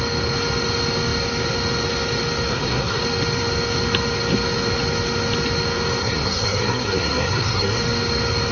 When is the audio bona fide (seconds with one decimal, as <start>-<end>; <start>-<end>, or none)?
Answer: 0.0-2.5; 3.0-6.0; 7.8-8.5